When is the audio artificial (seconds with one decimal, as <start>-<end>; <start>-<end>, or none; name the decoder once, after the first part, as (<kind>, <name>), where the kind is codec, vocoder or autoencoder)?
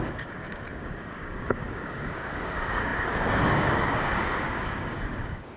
0.0-5.6 (codec, DAC)